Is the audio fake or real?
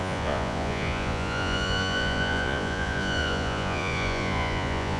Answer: fake